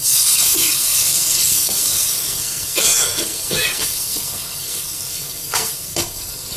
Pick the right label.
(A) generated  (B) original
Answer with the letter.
A